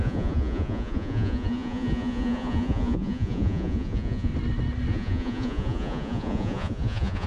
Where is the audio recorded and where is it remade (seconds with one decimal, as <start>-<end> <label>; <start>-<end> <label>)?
0.0-4.3 remade; 4.3-4.9 recorded; 4.9-7.3 remade